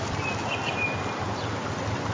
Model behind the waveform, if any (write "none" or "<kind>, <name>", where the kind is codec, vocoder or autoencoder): none